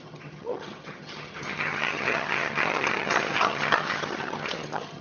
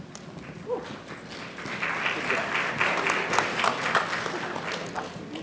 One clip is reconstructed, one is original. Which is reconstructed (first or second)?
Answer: first